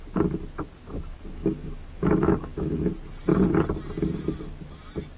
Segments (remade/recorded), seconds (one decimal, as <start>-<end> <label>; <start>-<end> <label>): 0.0-1.4 recorded; 1.4-2.9 remade; 2.9-5.2 recorded